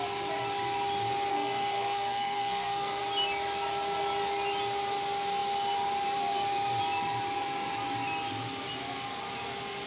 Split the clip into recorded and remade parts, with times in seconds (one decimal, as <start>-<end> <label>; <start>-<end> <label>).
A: 0.0-1.3 recorded; 1.3-3.0 remade; 3.0-9.9 recorded